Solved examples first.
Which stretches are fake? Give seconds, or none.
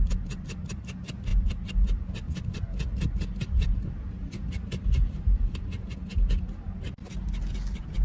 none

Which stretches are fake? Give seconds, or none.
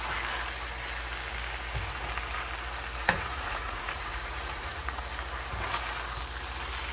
3.0-5.0 (vocoder, Vocos)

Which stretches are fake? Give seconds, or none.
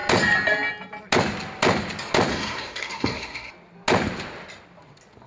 2.3-3.5 (codec, SNAC)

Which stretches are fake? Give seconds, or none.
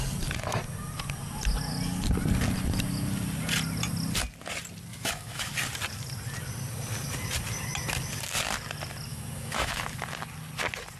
4.9-5.5 (autoencoder, DAC-VAE); 9.1-9.8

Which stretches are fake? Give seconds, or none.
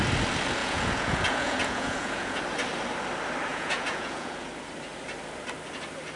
0.6-2.4 (vocoder, Vocos); 3.5-4.5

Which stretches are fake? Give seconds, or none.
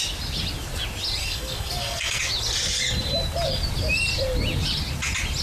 1.2-2.2 (codec, SNAC)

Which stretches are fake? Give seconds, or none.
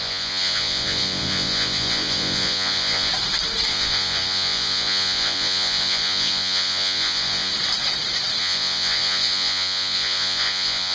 0.0-3.1 (vocoder, Vocos); 3.7-7.5; 8.4-10.9